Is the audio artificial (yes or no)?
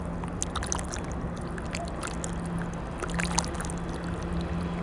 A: no